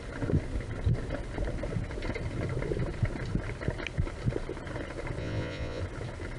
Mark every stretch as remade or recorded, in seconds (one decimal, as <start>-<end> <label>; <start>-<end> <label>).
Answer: 0.0-5.2 recorded; 5.2-5.8 remade; 5.8-6.4 recorded